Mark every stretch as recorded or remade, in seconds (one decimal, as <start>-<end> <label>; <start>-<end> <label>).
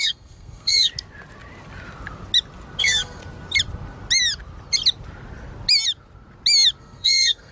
0.0-0.9 remade; 0.9-2.8 recorded; 2.8-3.2 remade; 3.2-6.8 recorded; 6.8-7.5 remade